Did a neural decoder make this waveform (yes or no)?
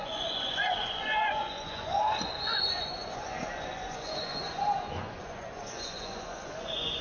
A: yes